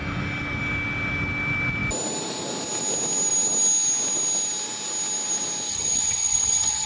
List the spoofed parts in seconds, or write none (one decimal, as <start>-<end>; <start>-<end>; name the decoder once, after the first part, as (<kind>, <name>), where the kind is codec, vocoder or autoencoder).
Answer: 5.7-6.9 (vocoder, HiFi-GAN)